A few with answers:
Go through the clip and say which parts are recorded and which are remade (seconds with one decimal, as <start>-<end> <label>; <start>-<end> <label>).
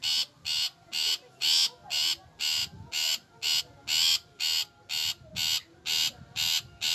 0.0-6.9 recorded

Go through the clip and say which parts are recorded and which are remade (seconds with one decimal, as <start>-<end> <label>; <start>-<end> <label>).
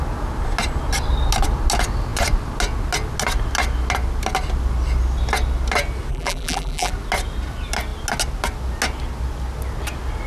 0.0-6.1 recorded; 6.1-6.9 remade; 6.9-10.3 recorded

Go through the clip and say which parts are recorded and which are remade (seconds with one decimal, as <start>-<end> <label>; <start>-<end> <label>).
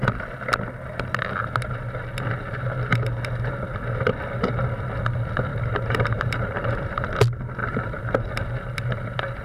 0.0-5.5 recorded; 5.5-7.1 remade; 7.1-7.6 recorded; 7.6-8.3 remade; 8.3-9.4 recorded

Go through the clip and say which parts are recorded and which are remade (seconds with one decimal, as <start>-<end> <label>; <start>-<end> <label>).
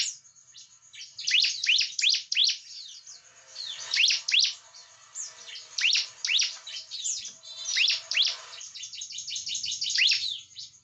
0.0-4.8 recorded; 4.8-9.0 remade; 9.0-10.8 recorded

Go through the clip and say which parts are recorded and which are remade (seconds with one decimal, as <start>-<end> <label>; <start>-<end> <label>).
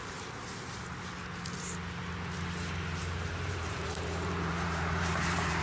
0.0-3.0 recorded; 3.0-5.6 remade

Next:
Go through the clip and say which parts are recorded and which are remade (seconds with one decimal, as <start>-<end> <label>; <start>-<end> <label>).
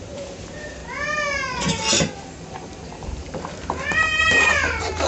0.0-0.8 remade; 0.8-3.4 recorded; 3.4-5.1 remade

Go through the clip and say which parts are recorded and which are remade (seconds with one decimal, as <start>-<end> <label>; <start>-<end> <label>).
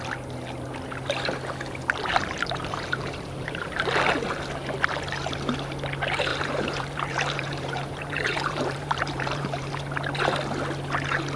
0.0-2.1 recorded; 2.1-4.0 remade; 4.0-6.3 recorded; 6.3-9.7 remade; 9.7-11.4 recorded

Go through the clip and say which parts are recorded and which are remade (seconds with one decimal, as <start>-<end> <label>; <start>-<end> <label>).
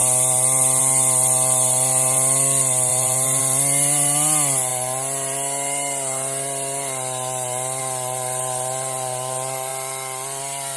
0.0-2.9 recorded; 2.9-3.4 remade; 3.4-10.8 recorded